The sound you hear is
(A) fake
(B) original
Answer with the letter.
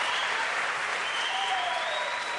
A